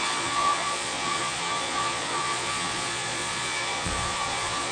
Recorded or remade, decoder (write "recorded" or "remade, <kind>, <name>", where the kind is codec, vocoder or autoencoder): remade, vocoder, Vocos